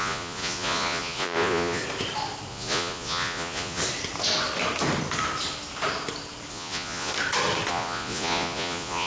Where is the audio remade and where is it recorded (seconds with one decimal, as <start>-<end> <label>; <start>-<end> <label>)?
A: 0.0-1.8 remade; 1.8-2.5 recorded; 2.5-3.8 remade; 3.8-6.5 recorded; 6.5-7.1 remade; 7.1-7.7 recorded; 7.7-9.1 remade